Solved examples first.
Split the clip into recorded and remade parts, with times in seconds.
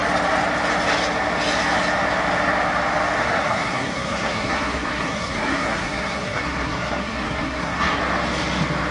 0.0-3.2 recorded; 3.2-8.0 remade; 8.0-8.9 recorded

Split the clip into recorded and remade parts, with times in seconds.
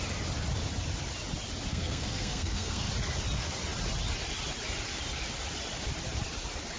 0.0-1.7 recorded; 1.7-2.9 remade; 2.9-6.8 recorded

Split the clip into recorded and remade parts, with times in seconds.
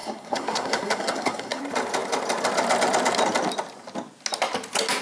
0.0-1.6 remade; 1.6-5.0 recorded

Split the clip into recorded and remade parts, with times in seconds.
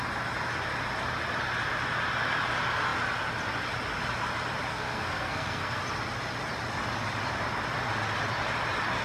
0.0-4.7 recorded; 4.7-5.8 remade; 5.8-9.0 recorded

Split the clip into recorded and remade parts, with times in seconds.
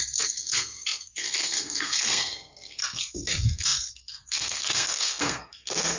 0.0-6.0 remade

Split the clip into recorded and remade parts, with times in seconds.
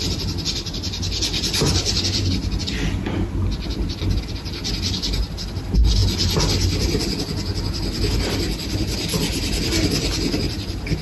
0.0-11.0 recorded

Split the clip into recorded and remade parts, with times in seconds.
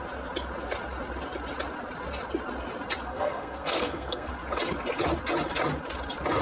0.0-3.1 recorded; 3.1-4.3 remade; 4.3-6.4 recorded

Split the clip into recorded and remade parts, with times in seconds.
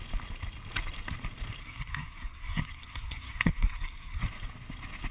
0.0-1.6 recorded; 1.6-4.2 remade; 4.2-5.1 recorded